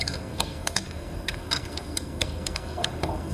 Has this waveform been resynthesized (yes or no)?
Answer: yes